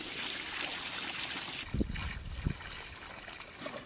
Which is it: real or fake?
real